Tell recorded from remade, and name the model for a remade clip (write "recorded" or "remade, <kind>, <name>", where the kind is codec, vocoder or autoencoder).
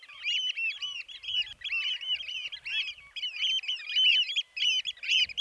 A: recorded